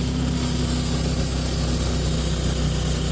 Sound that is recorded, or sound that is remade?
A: recorded